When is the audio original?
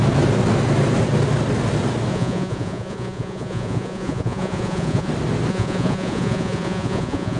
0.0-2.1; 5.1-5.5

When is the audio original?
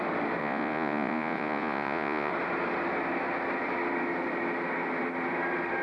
0.0-0.4; 2.3-5.8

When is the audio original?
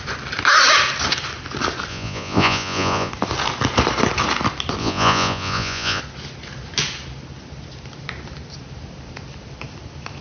0.0-1.9; 3.1-4.8; 6.0-10.2